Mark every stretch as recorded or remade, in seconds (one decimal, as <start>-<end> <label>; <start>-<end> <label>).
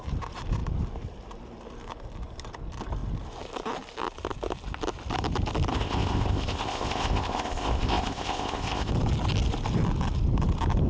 0.0-5.7 recorded; 5.7-8.9 remade; 8.9-10.9 recorded